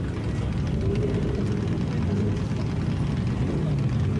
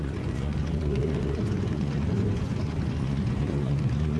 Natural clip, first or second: first